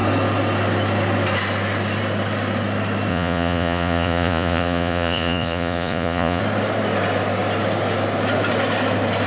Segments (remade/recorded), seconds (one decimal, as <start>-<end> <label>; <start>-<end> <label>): 0.0-3.1 recorded; 3.1-6.4 remade; 6.4-9.3 recorded